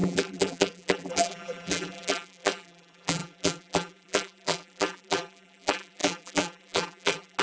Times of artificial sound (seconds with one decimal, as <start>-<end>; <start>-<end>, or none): 0.0-7.4